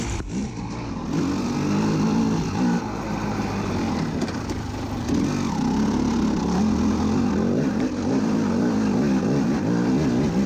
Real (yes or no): yes